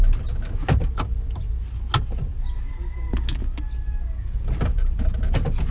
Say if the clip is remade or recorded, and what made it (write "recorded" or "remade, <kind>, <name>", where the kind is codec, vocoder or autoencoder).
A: recorded